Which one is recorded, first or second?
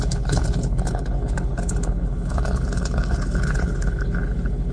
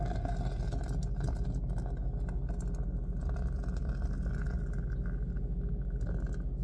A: second